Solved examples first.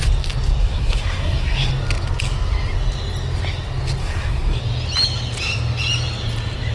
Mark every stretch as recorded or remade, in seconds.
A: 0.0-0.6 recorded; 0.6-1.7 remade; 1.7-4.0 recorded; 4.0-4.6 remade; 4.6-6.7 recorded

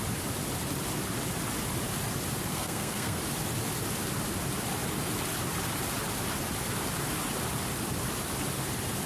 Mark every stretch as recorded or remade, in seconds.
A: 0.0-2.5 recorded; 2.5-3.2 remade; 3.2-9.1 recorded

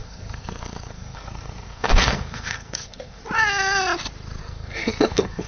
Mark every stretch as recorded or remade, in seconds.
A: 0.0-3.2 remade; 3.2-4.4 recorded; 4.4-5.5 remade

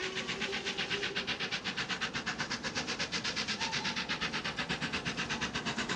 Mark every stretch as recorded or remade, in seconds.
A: 0.0-6.0 recorded